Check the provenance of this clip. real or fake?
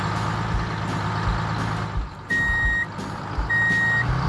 real